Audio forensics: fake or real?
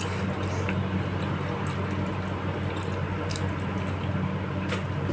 real